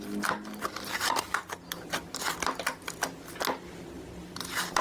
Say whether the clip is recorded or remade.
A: recorded